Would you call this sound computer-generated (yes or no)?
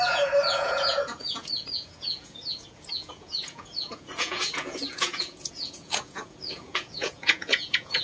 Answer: yes